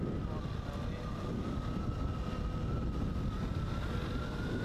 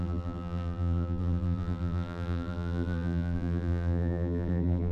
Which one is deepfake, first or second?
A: second